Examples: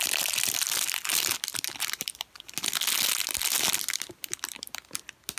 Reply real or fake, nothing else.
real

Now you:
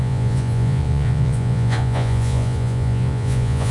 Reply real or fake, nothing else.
fake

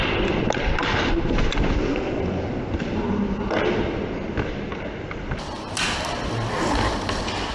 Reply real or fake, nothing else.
real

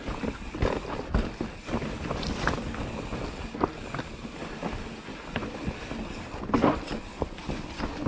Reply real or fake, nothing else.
real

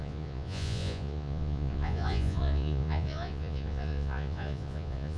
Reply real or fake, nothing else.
fake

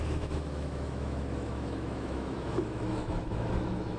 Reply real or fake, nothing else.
fake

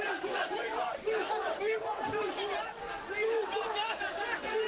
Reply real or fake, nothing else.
real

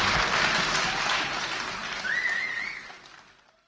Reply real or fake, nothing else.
real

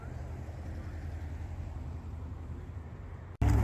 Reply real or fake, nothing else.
real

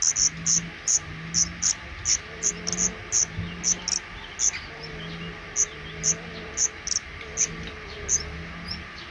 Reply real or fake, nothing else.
real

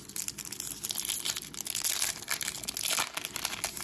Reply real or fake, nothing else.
real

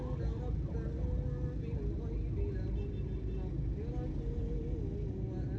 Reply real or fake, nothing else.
real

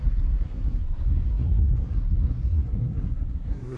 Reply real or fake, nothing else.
fake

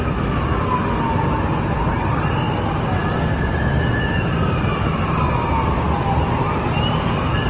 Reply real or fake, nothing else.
real